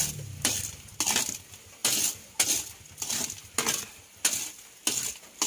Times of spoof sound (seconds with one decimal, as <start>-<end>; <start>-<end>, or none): none